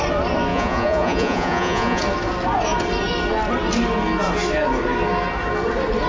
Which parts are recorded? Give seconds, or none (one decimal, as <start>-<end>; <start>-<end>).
0.0-0.5; 2.0-6.1